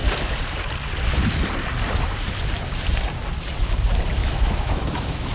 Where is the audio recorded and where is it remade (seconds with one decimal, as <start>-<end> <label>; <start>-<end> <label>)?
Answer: 0.0-4.2 recorded; 4.2-5.3 remade